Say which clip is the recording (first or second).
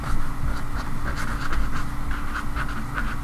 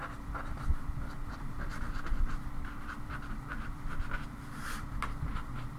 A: first